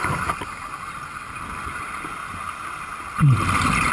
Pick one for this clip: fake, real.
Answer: real